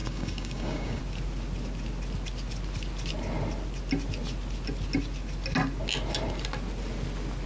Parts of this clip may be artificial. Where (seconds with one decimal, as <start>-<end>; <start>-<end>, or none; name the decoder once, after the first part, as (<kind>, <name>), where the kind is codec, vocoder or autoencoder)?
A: 0.0-1.0 (codec, DAC)